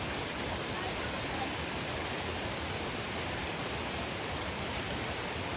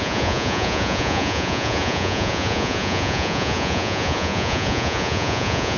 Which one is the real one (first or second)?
first